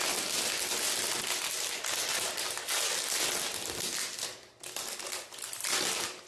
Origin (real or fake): real